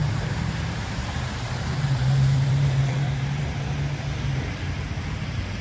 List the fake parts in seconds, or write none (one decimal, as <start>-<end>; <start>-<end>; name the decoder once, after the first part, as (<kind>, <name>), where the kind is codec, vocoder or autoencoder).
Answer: 0.0-3.4 (vocoder, BigVGAN v2)